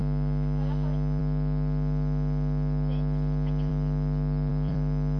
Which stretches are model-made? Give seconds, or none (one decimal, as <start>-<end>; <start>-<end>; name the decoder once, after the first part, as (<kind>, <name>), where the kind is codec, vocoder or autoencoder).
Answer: 1.2-5.2 (vocoder, BigVGAN v2)